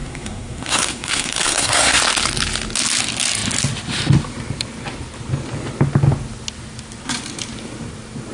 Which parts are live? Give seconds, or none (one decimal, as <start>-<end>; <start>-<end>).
2.0-8.3